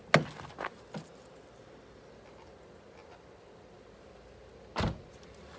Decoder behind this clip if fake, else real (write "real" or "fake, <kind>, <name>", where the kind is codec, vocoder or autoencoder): real